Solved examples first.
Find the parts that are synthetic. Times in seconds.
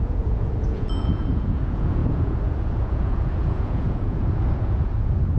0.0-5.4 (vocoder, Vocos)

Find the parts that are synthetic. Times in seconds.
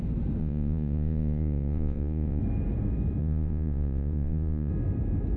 0.4-2.4 (vocoder, Vocos); 3.2-4.7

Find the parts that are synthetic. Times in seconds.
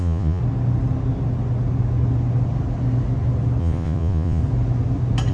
0.0-0.4 (vocoder, Vocos); 3.6-4.4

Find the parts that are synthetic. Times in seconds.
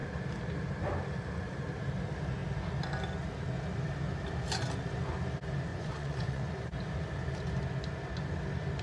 5.7-6.6 (vocoder, Vocos)